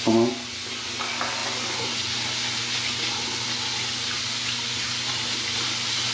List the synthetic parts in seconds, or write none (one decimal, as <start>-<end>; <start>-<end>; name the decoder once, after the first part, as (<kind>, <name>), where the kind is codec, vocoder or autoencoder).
none